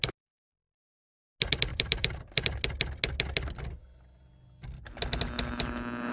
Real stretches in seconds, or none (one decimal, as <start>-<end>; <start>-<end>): 0.0-1.7; 2.2-6.1